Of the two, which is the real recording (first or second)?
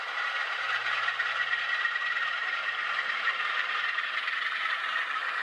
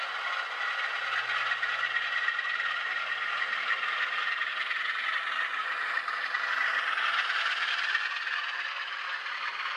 second